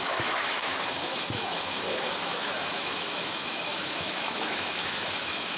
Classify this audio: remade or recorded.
remade